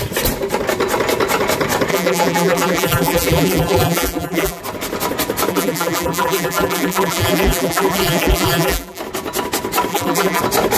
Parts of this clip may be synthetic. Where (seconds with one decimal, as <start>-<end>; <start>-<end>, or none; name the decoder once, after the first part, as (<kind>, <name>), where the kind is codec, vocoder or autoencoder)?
1.9-4.6 (vocoder, BigVGAN v2); 5.5-9.0; 9.9-10.4